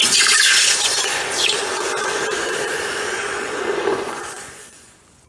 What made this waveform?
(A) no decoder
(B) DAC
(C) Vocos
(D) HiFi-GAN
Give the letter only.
C